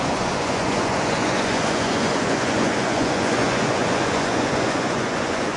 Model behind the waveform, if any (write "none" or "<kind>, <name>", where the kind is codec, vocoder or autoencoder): vocoder, Vocos